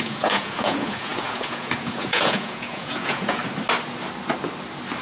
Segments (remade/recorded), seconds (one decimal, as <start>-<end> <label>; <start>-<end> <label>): 0.0-3.4 remade; 3.4-5.0 recorded